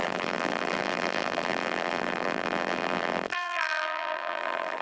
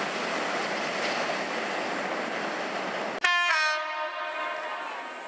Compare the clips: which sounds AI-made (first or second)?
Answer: first